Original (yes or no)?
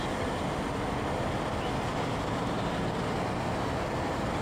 yes